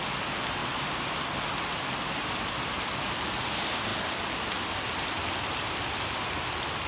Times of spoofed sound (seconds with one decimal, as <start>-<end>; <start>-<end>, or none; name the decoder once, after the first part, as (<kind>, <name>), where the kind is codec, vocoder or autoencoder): none